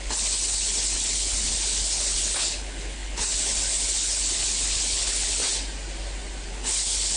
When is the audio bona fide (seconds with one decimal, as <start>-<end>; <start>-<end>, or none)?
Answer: 5.4-6.5